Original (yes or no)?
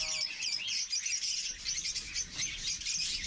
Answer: yes